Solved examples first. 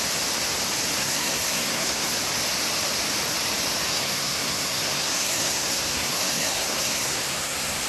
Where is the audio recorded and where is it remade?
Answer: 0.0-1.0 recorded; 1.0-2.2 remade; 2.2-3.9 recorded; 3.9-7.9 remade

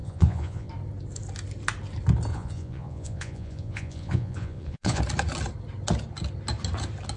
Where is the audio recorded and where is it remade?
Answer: 0.0-0.7 remade; 0.7-2.3 recorded; 2.3-5.0 remade; 5.0-7.2 recorded

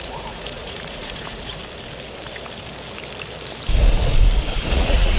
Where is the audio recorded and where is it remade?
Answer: 0.0-1.6 remade; 1.6-4.7 recorded; 4.7-5.2 remade

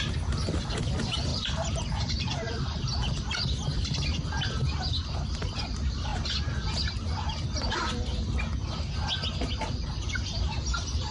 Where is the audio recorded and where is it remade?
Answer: 0.0-1.3 recorded; 1.3-2.9 remade; 2.9-11.1 recorded

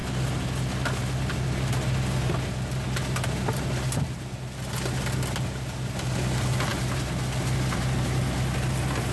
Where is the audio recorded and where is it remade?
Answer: 0.0-9.1 recorded